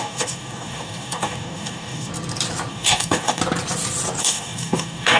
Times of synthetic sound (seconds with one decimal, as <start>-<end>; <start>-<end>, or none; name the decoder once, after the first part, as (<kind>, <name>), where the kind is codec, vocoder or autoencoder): 0.0-2.1 (codec, DAC); 2.7-3.4; 4.2-5.2